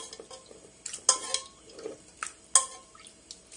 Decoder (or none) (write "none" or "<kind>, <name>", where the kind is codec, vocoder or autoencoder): none